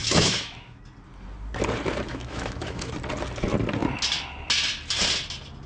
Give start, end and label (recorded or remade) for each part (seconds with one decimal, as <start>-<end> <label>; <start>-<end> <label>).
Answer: 0.0-0.8 remade; 0.8-2.1 recorded; 2.1-2.9 remade; 2.9-5.7 recorded